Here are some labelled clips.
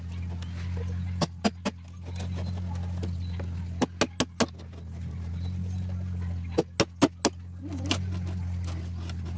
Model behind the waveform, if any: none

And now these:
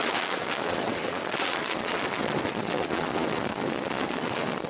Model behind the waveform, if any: vocoder, Vocos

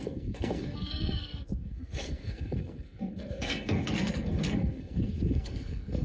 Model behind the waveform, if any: codec, SNAC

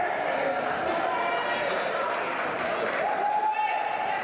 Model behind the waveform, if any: none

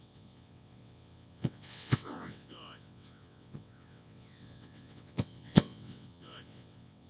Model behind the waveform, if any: vocoder, WaveNeXt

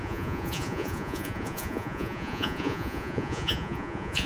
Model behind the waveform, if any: vocoder, Vocos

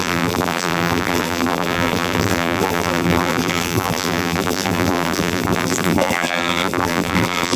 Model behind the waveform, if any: vocoder, BigVGAN v2